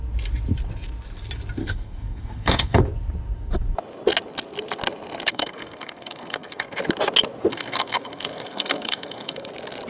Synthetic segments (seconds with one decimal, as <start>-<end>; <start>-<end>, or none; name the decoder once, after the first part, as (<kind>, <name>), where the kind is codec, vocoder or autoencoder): 1.6-2.8 (codec, SNAC); 5.3-6.8; 7.5-9.5